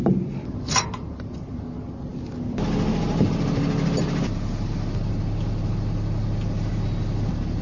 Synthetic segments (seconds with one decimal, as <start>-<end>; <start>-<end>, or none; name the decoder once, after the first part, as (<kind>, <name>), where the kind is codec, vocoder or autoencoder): none